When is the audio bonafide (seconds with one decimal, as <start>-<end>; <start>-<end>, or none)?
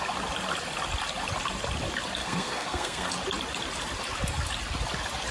0.0-2.2; 3.1-5.3